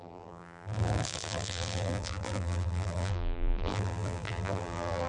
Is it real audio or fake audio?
fake